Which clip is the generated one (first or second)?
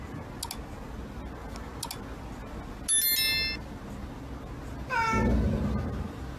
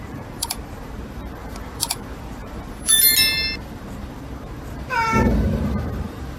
second